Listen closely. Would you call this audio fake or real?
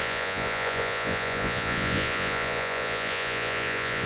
fake